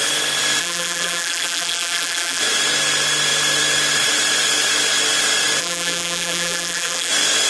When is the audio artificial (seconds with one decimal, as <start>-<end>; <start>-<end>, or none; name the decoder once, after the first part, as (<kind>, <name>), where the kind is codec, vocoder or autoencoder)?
0.6-2.4 (vocoder, BigVGAN v2); 5.6-7.1